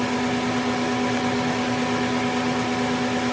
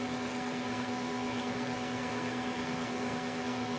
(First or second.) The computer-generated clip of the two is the second